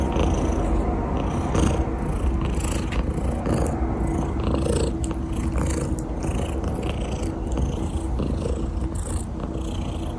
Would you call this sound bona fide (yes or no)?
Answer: yes